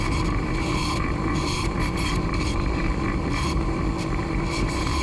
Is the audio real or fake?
fake